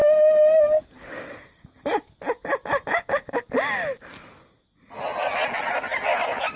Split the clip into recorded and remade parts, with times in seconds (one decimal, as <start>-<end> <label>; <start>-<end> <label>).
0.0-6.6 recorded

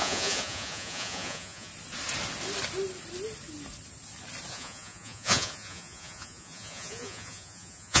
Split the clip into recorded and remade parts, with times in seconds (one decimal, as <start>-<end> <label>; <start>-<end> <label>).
0.0-1.7 remade; 1.7-4.5 recorded; 4.5-8.0 remade

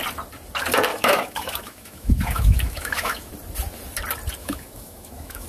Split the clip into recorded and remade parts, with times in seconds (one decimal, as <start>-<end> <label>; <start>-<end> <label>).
0.0-0.9 recorded; 0.9-3.3 remade; 3.3-4.4 recorded; 4.4-5.5 remade